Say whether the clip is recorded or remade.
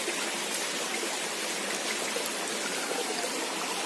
recorded